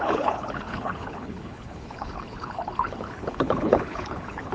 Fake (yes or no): yes